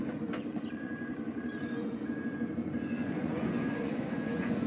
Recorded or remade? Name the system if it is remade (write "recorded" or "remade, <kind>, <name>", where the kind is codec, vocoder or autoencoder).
remade, vocoder, Vocos